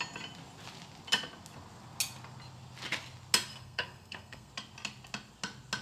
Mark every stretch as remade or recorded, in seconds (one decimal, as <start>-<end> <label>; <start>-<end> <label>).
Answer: 0.0-3.5 recorded; 3.5-4.5 remade; 4.5-5.8 recorded